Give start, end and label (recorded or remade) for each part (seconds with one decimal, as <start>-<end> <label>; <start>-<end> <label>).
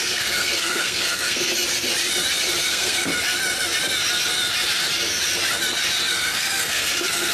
0.0-1.5 remade; 1.5-2.7 recorded; 2.7-3.1 remade; 3.1-6.1 recorded; 6.1-7.3 remade